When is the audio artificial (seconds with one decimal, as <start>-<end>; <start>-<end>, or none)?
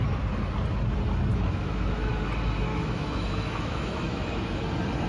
1.3-2.1; 2.7-4.6